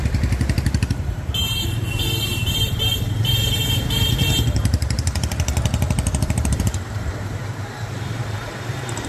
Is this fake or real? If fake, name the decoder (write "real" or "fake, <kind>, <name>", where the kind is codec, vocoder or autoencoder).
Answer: fake, vocoder, BigVGAN v2